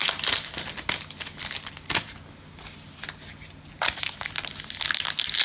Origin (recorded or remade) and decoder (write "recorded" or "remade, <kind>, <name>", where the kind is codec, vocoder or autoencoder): recorded